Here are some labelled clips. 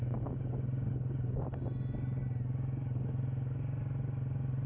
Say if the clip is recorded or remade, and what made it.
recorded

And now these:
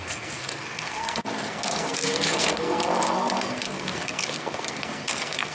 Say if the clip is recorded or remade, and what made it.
remade, codec, SNAC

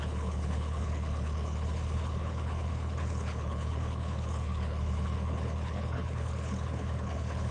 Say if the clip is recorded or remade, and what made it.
remade, codec, HILCodec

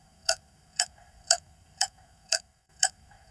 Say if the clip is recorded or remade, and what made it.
remade, codec, SNAC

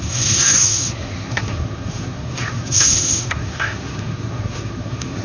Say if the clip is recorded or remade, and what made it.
remade, codec, SNAC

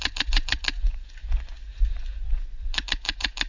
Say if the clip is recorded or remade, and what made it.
remade, vocoder, Vocos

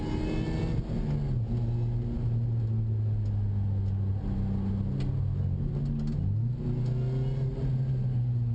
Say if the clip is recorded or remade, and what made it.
recorded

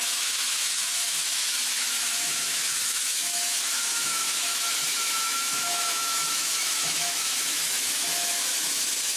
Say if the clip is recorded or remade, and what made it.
remade, autoencoder, DAC-VAE